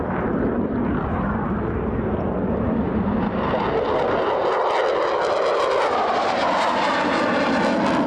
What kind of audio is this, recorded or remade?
recorded